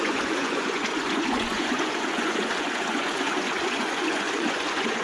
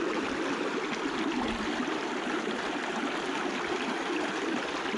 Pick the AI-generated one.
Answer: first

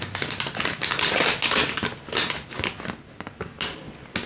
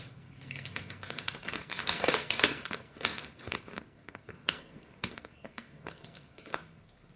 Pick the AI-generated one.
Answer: second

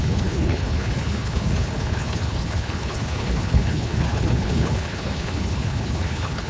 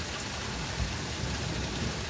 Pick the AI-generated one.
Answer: first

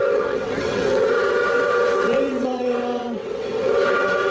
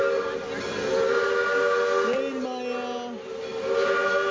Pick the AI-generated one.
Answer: first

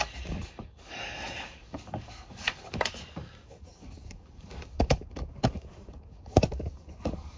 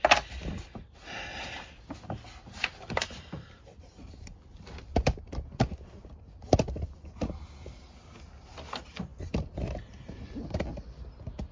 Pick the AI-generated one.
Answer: first